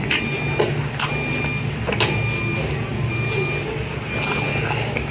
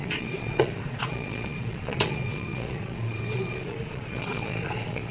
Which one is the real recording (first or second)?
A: first